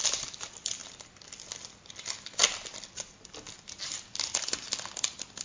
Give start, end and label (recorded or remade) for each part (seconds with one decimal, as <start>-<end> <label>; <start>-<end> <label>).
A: 0.0-5.4 recorded